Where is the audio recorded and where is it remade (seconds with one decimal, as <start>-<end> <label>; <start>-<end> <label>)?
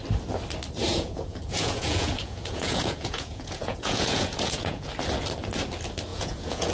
0.0-0.9 recorded; 0.9-4.9 remade; 4.9-6.1 recorded; 6.1-6.7 remade